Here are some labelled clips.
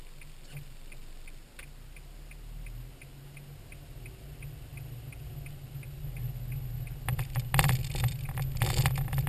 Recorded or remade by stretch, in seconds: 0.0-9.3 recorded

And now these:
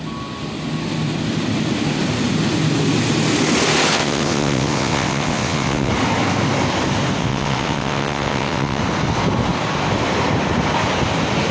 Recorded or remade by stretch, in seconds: 0.0-3.9 recorded; 3.9-5.9 remade; 5.9-7.2 recorded; 7.2-8.8 remade; 8.8-11.5 recorded

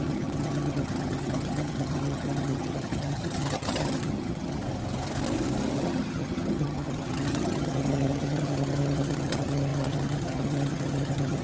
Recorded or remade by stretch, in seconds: 0.0-4.6 remade; 4.6-5.7 recorded; 5.7-11.4 remade

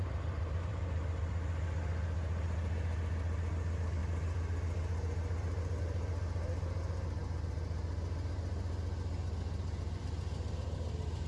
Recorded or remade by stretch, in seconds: 0.0-1.3 remade; 1.3-11.3 recorded

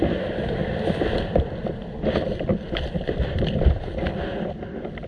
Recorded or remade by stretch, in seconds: 0.0-5.1 recorded

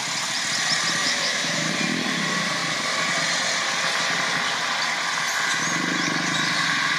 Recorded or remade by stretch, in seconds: 0.0-1.0 recorded; 1.0-1.7 remade; 1.7-7.0 recorded

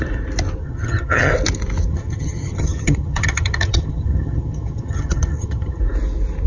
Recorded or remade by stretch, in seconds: 0.0-0.6 recorded; 0.6-1.3 remade; 1.3-1.9 recorded; 1.9-5.8 remade; 5.8-6.5 recorded

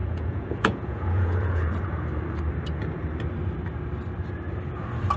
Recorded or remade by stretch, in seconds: 0.0-1.7 remade; 1.7-5.2 recorded